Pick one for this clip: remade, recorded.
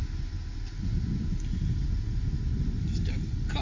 recorded